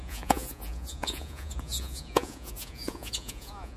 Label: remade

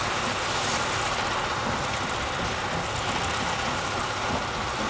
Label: recorded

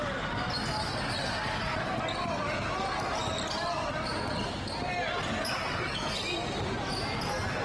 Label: recorded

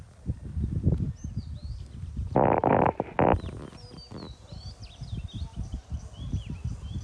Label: recorded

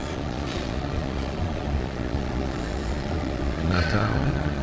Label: remade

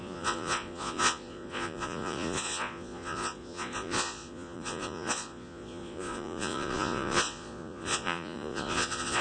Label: remade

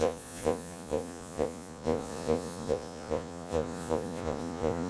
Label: remade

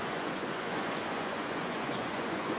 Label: remade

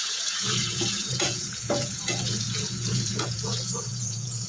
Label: remade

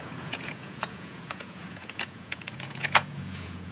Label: remade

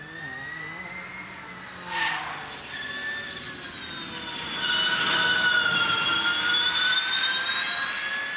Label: recorded